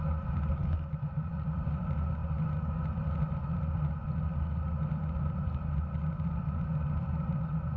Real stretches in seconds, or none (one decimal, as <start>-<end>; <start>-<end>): 0.0-7.8